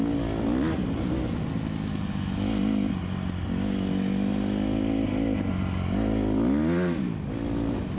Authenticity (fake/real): real